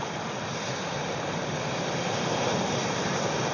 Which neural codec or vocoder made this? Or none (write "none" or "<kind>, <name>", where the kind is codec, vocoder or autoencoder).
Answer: none